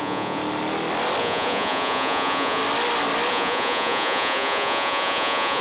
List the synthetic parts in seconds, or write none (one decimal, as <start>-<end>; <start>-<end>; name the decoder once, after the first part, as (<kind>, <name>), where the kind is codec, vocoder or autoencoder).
0.0-0.4 (vocoder, Vocos); 1.2-2.6; 3.3-5.6

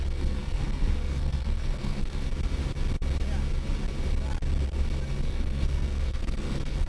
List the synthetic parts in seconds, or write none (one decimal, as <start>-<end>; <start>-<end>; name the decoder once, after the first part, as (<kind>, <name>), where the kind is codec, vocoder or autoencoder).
0.0-2.3 (codec, SNAC); 5.2-6.9

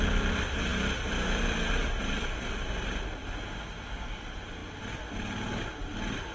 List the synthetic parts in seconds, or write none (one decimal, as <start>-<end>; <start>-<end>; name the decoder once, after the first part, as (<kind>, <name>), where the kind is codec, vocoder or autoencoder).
none

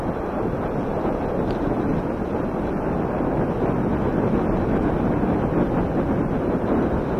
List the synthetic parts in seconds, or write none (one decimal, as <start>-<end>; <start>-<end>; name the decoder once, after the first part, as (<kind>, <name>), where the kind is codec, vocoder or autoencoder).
none

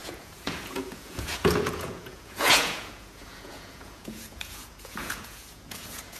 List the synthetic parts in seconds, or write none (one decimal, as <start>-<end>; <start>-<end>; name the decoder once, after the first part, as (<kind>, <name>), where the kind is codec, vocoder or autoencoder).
0.0-6.2 (vocoder, Vocos)

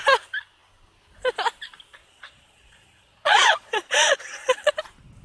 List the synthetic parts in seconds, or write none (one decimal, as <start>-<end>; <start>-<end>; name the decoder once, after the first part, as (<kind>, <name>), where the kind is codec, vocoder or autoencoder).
2.0-4.7 (vocoder, Vocos)

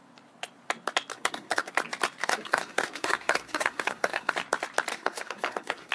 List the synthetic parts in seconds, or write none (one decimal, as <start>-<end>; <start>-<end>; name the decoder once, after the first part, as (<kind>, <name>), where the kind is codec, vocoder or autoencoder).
1.1-1.7 (codec, SNAC); 2.2-4.3; 4.9-5.9